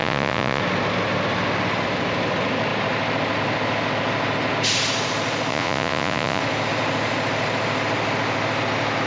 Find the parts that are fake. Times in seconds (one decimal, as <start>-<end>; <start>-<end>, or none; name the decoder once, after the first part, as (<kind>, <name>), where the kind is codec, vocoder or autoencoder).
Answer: 0.0-0.6 (vocoder, Vocos); 5.5-6.4